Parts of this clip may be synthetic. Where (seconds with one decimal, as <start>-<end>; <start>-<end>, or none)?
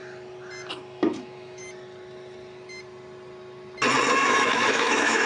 0.7-1.6; 4.1-5.3